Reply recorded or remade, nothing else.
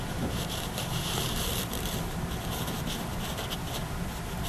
remade